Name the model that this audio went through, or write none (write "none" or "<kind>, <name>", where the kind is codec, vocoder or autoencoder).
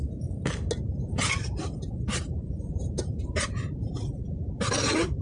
none